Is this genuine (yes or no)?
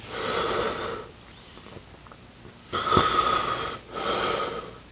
yes